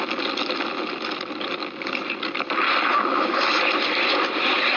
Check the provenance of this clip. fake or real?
real